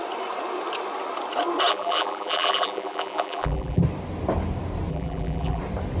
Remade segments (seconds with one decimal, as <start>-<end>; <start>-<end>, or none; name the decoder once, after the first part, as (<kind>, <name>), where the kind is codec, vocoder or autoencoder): 1.7-3.8 (vocoder, BigVGAN v2); 4.9-5.6